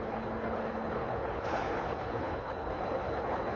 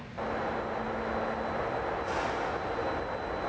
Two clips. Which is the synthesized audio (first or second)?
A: first